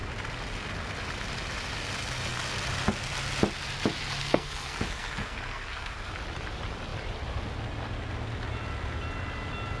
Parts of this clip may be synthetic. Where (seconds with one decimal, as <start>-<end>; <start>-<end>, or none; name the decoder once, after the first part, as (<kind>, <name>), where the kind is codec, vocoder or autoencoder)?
4.2-6.1 (codec, SNAC)

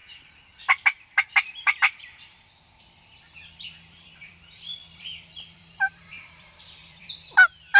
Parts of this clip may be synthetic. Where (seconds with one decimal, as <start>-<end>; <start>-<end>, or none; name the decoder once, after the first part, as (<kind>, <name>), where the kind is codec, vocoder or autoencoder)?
0.0-7.8 (vocoder, BigVGAN v2)

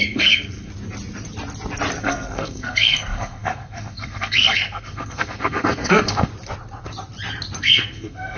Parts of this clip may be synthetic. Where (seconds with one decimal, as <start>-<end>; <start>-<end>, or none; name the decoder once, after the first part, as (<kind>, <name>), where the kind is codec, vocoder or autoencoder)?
0.0-0.7 (codec, SNAC); 2.0-6.3; 7.6-8.4